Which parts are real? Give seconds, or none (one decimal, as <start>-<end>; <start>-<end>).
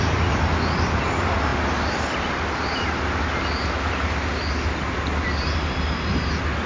0.0-6.7